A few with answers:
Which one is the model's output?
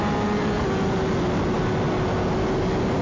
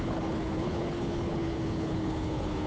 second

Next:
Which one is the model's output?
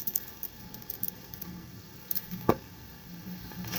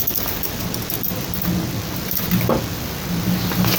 first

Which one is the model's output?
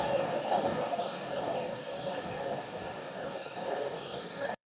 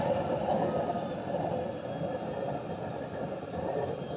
first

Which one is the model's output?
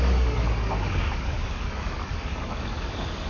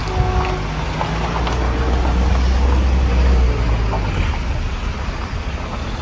first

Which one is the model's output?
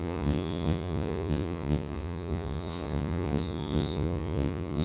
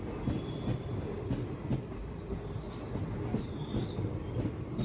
first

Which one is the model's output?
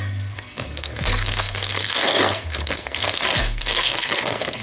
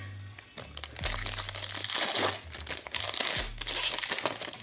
first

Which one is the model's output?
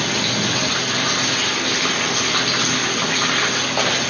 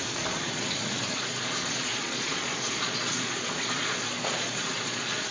second